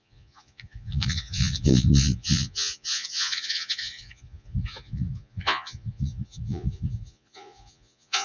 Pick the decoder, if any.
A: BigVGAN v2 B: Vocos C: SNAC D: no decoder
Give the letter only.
B